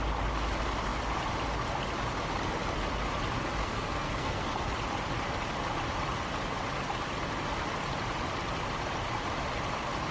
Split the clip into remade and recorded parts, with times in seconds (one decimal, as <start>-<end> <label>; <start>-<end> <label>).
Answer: 0.0-3.6 recorded; 3.6-4.7 remade; 4.7-10.1 recorded

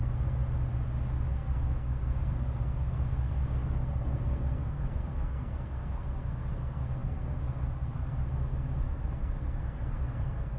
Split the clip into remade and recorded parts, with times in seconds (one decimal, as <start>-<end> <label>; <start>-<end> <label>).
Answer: 0.0-0.4 remade; 0.4-1.3 recorded; 1.3-10.6 remade

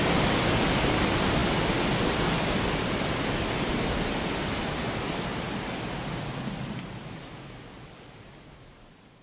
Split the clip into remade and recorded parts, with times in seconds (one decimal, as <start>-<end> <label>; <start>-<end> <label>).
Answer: 0.0-9.2 recorded

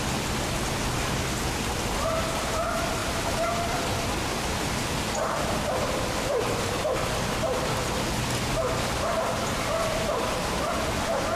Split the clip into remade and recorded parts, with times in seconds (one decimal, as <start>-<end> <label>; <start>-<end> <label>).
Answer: 0.0-3.0 recorded; 3.0-3.5 remade; 3.5-11.4 recorded

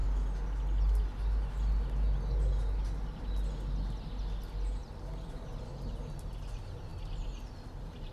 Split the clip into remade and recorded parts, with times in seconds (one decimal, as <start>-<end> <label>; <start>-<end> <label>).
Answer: 0.0-8.1 recorded

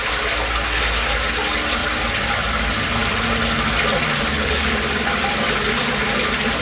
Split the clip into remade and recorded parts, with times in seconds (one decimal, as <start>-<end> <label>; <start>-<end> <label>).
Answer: 0.0-1.8 recorded; 1.8-5.7 remade; 5.7-6.6 recorded